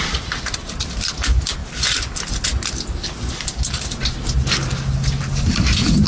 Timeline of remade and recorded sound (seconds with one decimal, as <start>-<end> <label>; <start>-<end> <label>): 0.0-6.1 recorded